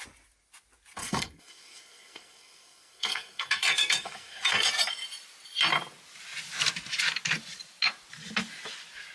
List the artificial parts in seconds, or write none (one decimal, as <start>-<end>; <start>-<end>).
1.0-4.7